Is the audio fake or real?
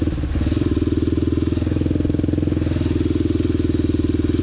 real